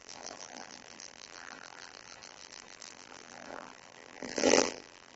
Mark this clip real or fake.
fake